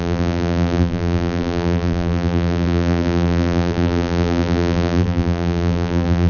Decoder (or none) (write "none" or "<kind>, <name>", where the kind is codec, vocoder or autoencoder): vocoder, BigVGAN v2